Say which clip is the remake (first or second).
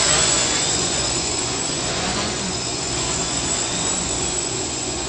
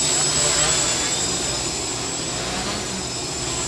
first